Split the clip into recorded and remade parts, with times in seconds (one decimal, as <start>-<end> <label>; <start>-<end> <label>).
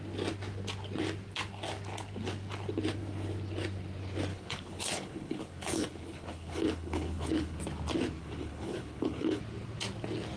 0.0-4.3 recorded; 4.3-7.6 remade; 7.6-8.2 recorded; 8.2-9.4 remade; 9.4-10.4 recorded